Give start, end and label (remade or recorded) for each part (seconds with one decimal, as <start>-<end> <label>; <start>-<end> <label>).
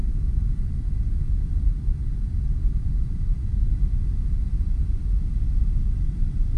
0.0-0.7 remade; 0.7-1.7 recorded; 1.7-3.7 remade; 3.7-6.6 recorded